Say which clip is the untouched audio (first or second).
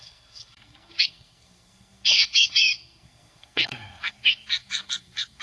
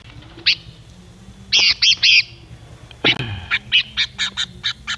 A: second